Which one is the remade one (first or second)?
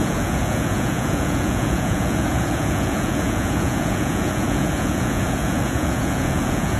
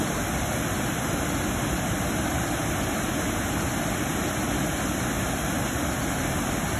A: first